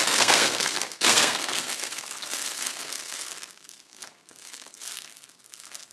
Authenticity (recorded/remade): remade